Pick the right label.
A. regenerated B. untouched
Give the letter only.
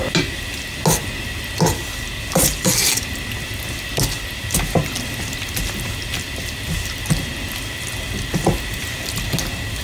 B